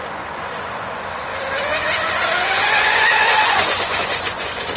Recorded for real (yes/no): no